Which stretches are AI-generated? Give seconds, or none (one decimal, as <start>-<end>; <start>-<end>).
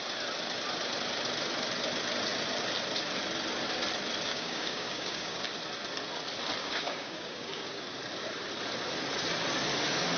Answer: 4.3-5.4; 6.6-7.8